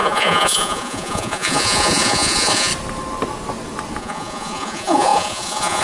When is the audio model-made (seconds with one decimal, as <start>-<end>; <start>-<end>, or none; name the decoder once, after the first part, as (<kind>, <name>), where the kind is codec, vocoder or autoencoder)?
0.0-2.7 (vocoder, Vocos); 4.0-5.8